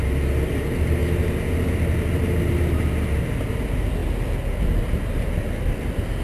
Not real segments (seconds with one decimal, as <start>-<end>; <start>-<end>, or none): none

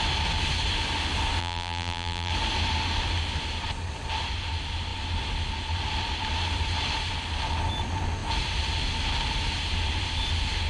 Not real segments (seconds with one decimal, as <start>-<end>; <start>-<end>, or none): 1.4-2.3

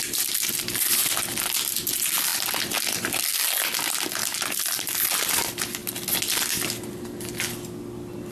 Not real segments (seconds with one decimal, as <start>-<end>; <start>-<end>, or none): none

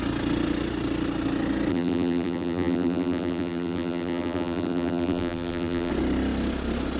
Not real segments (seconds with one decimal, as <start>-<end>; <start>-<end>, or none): 1.7-5.9

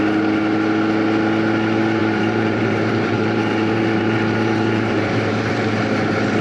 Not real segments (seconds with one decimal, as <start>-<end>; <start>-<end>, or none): 2.0-5.7

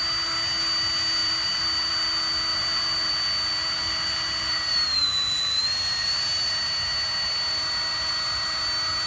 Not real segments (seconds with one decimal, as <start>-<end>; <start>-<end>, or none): 1.2-1.9; 2.5-3.1; 3.6-6.5